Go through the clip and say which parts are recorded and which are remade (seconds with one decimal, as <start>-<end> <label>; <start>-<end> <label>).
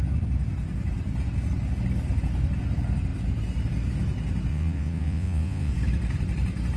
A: 0.0-4.5 recorded; 4.5-5.7 remade; 5.7-6.8 recorded